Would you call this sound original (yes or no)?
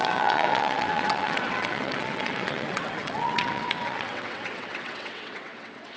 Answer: no